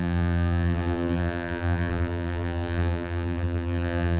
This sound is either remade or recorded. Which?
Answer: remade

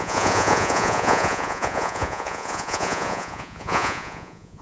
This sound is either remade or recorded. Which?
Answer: remade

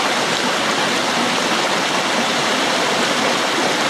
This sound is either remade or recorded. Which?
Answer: recorded